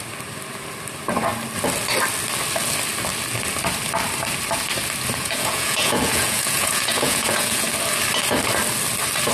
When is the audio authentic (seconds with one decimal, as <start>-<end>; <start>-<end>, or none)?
0.0-5.2; 7.7-9.3